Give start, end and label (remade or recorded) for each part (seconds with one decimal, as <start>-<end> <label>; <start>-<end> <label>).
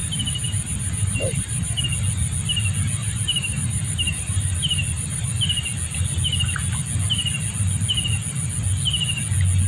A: 0.0-1.8 remade; 1.8-3.0 recorded; 3.0-5.3 remade; 5.3-9.7 recorded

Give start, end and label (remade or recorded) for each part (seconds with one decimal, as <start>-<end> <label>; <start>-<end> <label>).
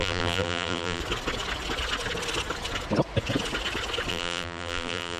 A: 0.0-1.0 remade; 1.0-4.1 recorded; 4.1-5.2 remade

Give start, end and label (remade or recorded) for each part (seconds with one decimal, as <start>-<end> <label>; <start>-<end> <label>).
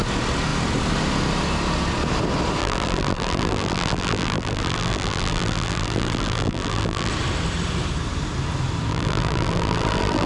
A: 0.0-2.6 recorded; 2.6-7.1 remade; 7.1-8.9 recorded; 8.9-10.3 remade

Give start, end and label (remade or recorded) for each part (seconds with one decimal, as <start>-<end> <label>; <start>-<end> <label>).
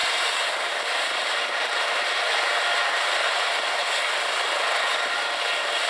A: 0.0-3.5 remade; 3.5-5.9 recorded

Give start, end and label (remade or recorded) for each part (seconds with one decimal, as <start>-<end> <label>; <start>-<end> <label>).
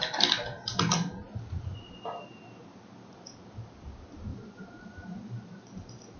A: 0.0-4.3 recorded; 4.3-6.2 remade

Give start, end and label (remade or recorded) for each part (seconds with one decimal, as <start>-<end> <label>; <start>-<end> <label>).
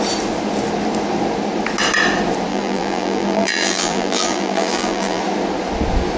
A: 0.0-2.5 recorded; 2.5-5.2 remade; 5.2-6.2 recorded